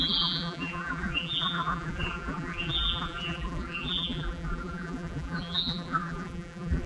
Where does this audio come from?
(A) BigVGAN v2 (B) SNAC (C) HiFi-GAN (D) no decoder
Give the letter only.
A